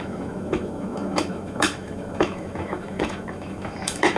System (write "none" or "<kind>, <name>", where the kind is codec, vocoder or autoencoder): autoencoder, DAC-VAE